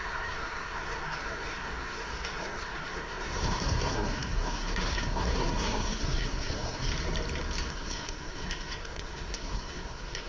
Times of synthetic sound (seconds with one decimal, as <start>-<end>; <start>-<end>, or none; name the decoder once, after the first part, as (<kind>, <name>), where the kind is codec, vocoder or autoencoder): 0.0-6.9 (codec, SNAC); 7.7-10.3